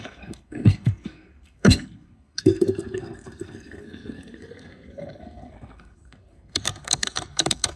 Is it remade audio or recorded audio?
remade